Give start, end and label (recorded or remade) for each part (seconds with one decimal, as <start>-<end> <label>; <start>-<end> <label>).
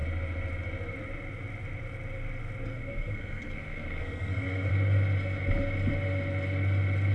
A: 0.0-2.7 recorded; 2.7-4.7 remade; 4.7-7.1 recorded